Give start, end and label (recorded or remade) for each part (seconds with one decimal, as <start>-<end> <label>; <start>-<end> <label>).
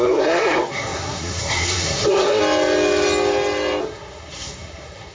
0.0-2.4 remade; 2.4-3.8 recorded; 3.8-5.1 remade